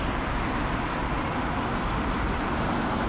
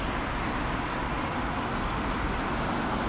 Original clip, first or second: second